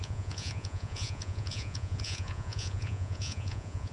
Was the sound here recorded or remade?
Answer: remade